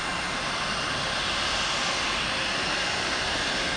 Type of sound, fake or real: real